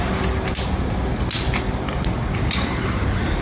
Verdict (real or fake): real